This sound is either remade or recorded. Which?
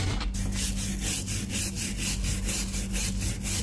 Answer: recorded